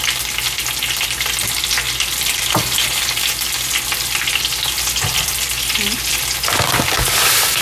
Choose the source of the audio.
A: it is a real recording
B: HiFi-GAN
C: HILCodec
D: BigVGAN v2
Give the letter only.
A